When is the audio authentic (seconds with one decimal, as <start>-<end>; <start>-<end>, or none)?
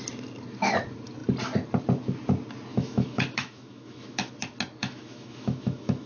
0.0-2.7; 4.3-4.8